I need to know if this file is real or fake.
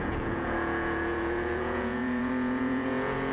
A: fake